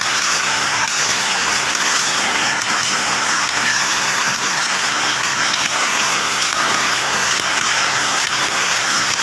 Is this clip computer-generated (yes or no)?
yes